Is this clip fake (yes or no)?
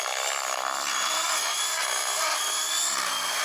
no